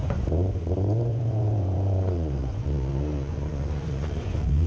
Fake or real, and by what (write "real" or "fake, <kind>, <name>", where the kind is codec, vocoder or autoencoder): fake, vocoder, Vocos